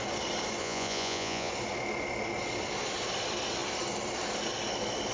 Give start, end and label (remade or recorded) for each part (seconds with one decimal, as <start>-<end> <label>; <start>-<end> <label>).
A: 0.0-0.6 recorded; 0.6-1.5 remade; 1.5-5.1 recorded